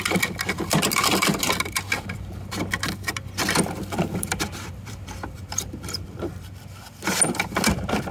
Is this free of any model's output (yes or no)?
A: no